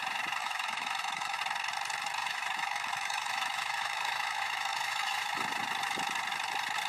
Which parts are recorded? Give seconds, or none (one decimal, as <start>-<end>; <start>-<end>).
0.0-0.4; 1.4-2.2; 5.4-6.9